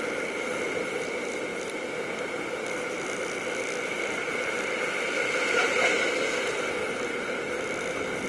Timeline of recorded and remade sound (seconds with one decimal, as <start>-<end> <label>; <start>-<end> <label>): 0.0-1.5 remade; 1.5-3.6 recorded; 3.6-6.8 remade; 6.8-7.5 recorded; 7.5-8.3 remade